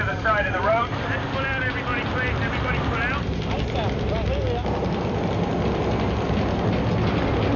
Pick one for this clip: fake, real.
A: real